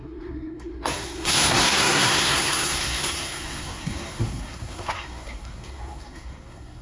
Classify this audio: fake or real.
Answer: fake